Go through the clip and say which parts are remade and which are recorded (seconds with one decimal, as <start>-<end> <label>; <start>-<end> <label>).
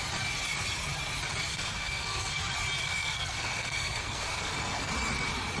0.0-1.5 recorded; 1.5-2.4 remade; 2.4-2.8 recorded; 2.8-4.9 remade; 4.9-5.6 recorded